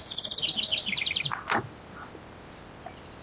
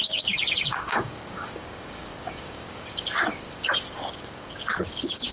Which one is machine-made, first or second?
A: second